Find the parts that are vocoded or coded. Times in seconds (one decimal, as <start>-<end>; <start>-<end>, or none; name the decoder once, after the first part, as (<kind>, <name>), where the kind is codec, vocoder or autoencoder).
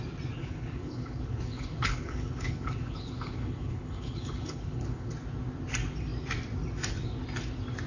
0.4-5.1 (codec, HILCodec)